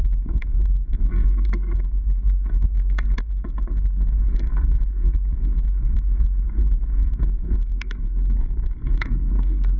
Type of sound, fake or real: fake